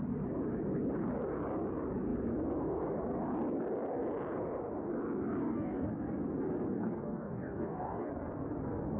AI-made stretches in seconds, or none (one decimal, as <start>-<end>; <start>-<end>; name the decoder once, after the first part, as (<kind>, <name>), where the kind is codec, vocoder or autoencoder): 5.4-5.9 (codec, DAC); 6.7-8.1